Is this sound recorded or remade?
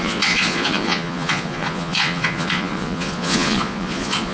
remade